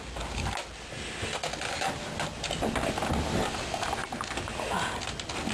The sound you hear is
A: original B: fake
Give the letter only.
A